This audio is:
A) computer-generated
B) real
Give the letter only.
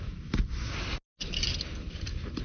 B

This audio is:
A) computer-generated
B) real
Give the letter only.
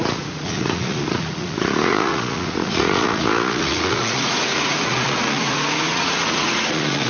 A